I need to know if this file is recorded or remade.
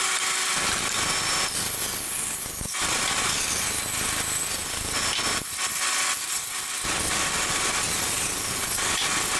recorded